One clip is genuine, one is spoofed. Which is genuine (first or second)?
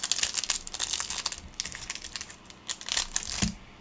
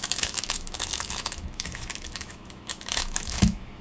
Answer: first